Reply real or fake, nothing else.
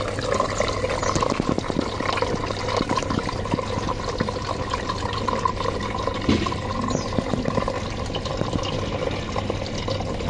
real